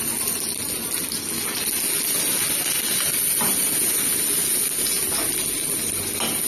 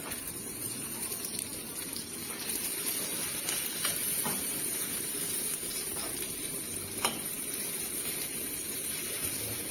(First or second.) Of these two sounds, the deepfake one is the second